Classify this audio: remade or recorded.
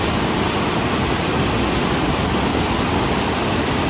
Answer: recorded